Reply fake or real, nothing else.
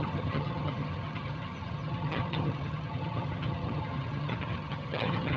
fake